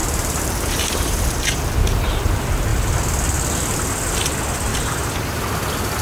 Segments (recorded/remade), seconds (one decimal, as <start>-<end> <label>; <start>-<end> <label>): 0.0-1.6 remade; 1.6-4.7 recorded; 4.7-5.4 remade; 5.4-6.0 recorded

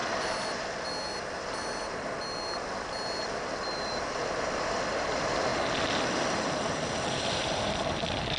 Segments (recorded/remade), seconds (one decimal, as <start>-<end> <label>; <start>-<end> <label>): 0.0-3.8 recorded; 3.8-5.5 remade; 5.5-7.2 recorded; 7.2-8.4 remade

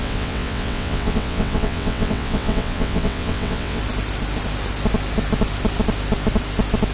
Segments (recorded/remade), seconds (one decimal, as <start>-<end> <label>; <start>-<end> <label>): 0.0-3.8 remade; 3.8-6.9 recorded

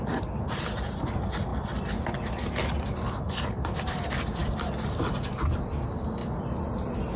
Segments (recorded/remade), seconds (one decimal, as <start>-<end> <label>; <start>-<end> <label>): 0.0-7.2 recorded

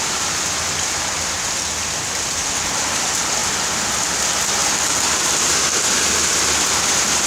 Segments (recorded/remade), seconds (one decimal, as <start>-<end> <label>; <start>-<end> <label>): 0.0-7.3 recorded

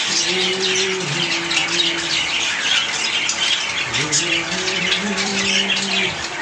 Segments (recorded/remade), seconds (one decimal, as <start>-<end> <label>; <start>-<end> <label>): 0.0-5.3 remade; 5.3-5.9 recorded; 5.9-6.4 remade

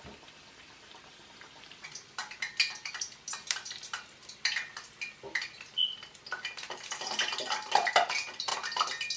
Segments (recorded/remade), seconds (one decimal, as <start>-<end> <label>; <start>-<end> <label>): 0.0-9.2 recorded

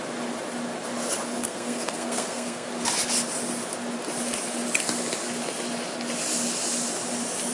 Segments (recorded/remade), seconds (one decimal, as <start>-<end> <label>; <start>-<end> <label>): 0.0-1.4 recorded; 1.4-2.7 remade; 2.7-7.5 recorded